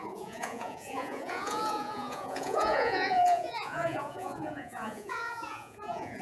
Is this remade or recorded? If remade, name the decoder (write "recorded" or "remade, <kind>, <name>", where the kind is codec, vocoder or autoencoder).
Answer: remade, vocoder, Vocos